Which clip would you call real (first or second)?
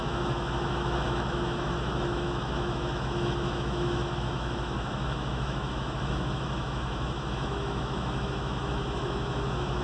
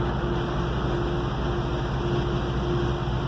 second